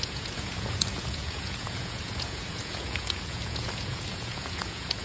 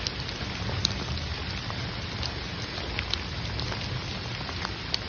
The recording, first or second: second